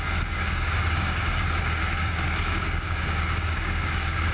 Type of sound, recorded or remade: remade